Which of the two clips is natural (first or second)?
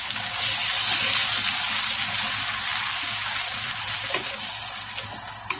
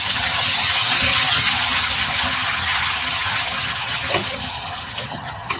first